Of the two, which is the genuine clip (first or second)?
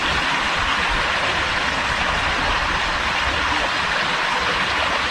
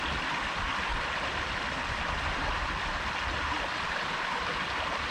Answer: second